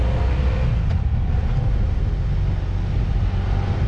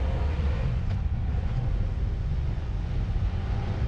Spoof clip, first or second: second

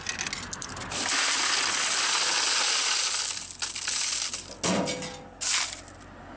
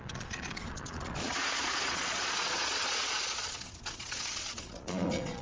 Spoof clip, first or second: second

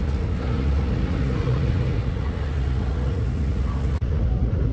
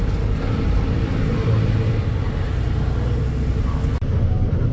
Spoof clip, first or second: first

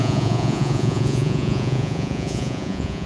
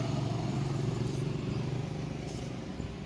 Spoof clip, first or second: first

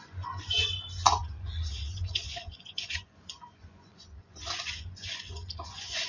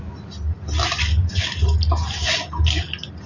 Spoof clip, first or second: first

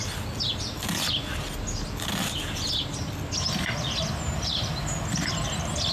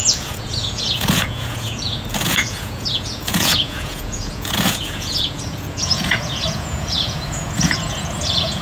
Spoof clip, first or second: second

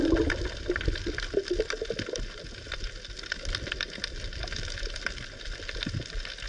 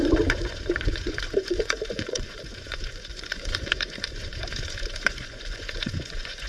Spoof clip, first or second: second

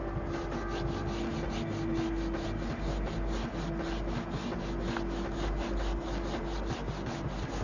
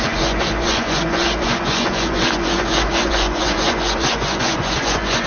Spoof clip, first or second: second